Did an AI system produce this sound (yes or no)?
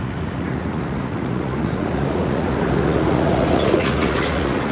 yes